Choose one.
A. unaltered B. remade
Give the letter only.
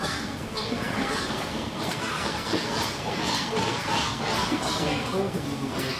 B